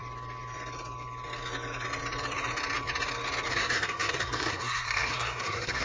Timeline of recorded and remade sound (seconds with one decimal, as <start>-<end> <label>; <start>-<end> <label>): 0.0-3.5 recorded; 3.5-5.8 remade